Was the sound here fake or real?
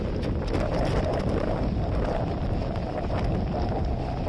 real